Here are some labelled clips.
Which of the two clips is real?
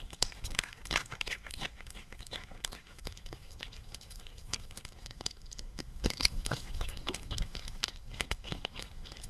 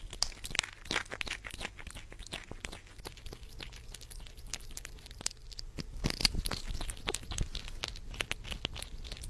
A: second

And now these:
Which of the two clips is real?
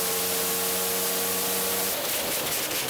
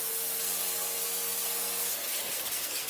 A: first